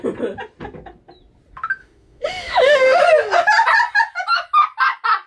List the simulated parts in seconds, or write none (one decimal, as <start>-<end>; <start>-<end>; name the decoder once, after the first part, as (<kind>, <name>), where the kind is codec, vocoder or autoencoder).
1.8-3.0 (autoencoder, DAC-VAE)